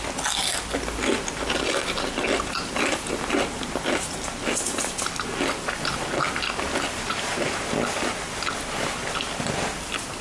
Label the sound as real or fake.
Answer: real